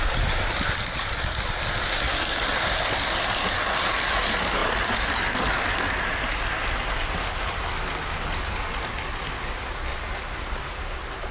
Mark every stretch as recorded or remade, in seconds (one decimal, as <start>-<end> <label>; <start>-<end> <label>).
0.0-9.9 recorded; 9.9-11.3 remade